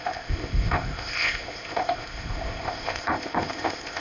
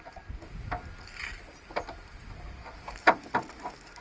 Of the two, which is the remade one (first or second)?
first